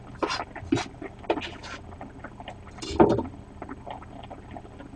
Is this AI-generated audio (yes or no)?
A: no